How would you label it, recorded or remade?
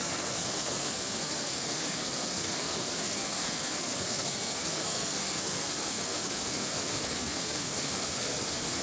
remade